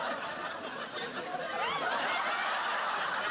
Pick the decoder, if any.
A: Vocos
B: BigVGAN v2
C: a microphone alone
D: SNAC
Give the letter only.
C